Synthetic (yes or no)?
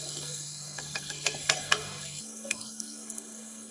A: yes